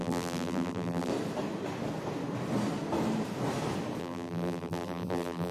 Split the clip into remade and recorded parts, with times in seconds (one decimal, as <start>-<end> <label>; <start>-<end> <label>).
0.0-1.1 remade; 1.1-4.0 recorded; 4.0-5.5 remade